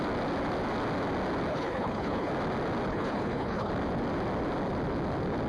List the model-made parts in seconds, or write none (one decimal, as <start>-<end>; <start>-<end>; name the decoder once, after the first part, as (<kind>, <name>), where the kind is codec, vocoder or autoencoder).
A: 1.5-2.3 (codec, HILCodec); 2.9-3.7